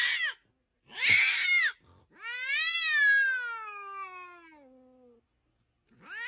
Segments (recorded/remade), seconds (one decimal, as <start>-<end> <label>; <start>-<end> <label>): 0.0-6.3 recorded